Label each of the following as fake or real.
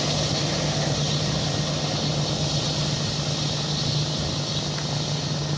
real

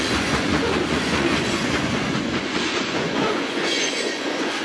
fake